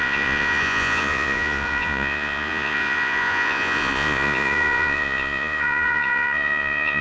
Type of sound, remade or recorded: remade